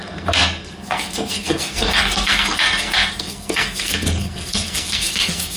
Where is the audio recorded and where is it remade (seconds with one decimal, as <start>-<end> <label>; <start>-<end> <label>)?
0.0-5.6 remade